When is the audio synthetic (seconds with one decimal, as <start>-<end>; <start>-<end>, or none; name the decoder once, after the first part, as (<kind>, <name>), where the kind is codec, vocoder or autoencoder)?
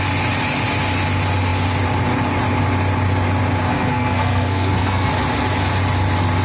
3.7-5.1 (codec, SNAC)